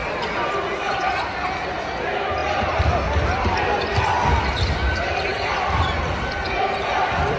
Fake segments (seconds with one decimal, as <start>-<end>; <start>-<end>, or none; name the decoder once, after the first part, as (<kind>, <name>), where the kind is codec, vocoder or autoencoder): 1.2-7.4 (vocoder, BigVGAN v2)